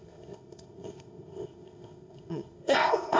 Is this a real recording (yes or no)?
no